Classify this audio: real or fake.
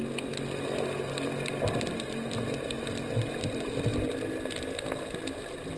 real